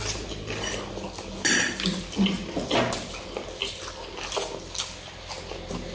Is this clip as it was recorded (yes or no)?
yes